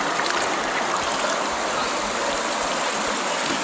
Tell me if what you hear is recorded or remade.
recorded